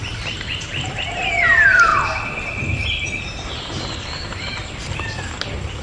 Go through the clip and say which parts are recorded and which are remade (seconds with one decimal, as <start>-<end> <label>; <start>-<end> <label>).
0.0-1.9 remade; 1.9-3.2 recorded; 3.2-4.6 remade; 4.6-5.8 recorded

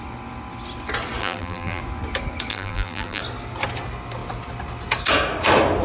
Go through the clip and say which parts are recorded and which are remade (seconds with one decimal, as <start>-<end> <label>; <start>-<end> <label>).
0.0-1.2 recorded; 1.2-1.8 remade; 1.8-2.5 recorded; 2.5-3.2 remade; 3.2-5.8 recorded

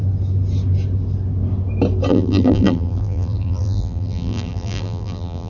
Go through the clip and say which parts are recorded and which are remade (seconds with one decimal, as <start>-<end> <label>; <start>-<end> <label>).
0.0-2.1 recorded; 2.1-5.5 remade